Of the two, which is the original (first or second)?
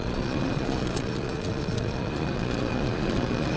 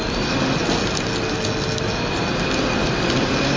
second